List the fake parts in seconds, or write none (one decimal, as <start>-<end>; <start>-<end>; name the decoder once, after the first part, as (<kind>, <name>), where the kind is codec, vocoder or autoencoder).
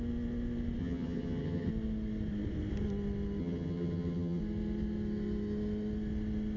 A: 0.8-1.7 (vocoder, HiFi-GAN); 3.4-4.4